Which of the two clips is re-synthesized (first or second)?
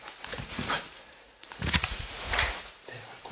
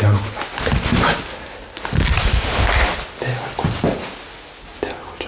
first